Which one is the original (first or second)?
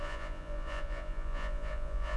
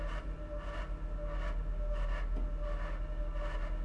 second